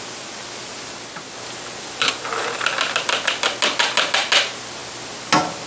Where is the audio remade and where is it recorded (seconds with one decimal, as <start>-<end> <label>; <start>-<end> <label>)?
0.0-5.7 recorded